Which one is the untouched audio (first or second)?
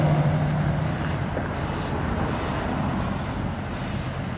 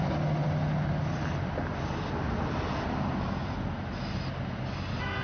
second